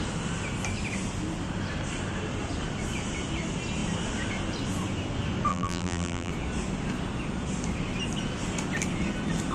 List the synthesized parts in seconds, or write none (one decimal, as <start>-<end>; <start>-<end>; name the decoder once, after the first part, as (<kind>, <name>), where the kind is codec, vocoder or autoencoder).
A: 5.5-6.3 (vocoder, BigVGAN v2)